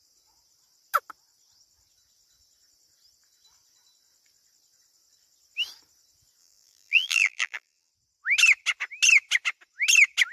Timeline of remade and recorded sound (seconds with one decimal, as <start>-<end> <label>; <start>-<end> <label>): 0.0-6.4 recorded; 6.4-7.9 remade; 7.9-10.3 recorded